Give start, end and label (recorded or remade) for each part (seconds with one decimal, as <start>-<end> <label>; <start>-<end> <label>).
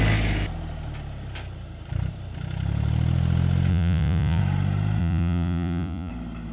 0.0-3.7 recorded; 3.7-4.4 remade; 4.4-5.0 recorded; 5.0-6.1 remade; 6.1-6.5 recorded